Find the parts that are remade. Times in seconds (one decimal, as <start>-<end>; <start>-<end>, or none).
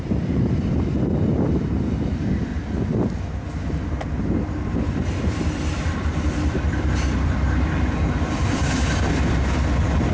0.0-2.5; 4.2-10.1